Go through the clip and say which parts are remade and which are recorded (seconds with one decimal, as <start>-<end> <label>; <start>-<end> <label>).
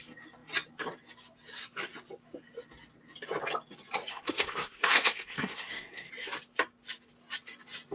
0.0-4.1 recorded; 4.1-6.1 remade; 6.1-7.9 recorded